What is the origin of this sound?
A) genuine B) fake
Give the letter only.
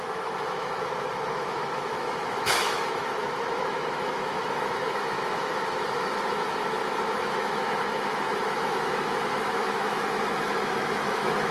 B